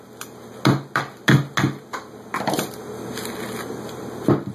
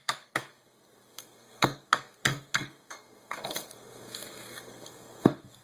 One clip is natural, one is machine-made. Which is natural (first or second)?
first